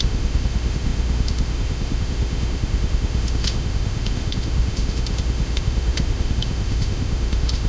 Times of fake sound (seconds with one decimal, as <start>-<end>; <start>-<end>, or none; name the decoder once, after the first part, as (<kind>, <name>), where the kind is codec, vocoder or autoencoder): 0.0-7.7 (autoencoder, DAC-VAE)